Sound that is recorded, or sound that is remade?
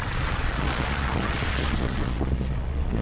remade